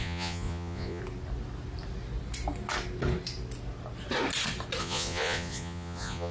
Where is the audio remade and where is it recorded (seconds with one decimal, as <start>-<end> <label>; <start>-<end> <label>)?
0.0-1.0 remade; 1.0-4.8 recorded; 4.8-6.3 remade